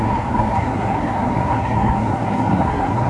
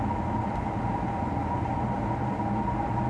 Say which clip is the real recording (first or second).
second